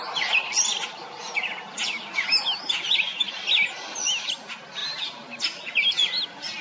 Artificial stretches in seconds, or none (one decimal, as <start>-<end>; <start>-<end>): none